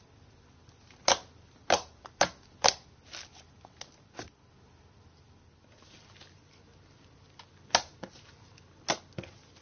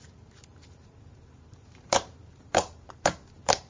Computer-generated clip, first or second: second